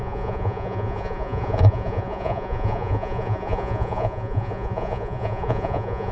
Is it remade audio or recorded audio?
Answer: remade